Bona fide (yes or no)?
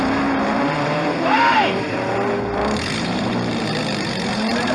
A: no